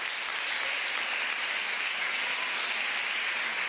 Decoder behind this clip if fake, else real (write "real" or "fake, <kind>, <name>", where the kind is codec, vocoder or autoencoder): real